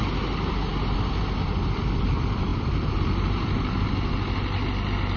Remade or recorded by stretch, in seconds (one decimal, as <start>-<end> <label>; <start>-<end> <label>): 0.0-5.2 recorded